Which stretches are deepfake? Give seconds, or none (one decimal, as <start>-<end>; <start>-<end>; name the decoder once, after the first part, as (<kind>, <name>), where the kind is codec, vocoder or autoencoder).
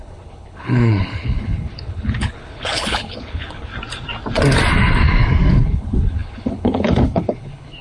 0.0-3.7 (codec, HILCodec); 5.5-7.8